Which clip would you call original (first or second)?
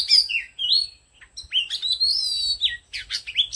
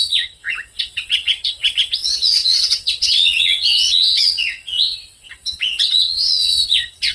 first